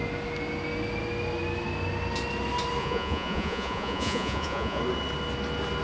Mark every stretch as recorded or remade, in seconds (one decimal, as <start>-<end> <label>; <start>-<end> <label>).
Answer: 0.0-2.8 recorded; 2.8-4.8 remade; 4.8-5.8 recorded